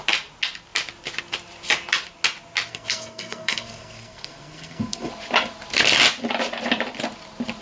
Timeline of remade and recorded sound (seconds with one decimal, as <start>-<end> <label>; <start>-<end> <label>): 0.0-2.7 recorded; 2.7-5.1 remade; 5.1-7.6 recorded